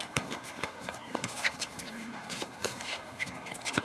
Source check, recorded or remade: remade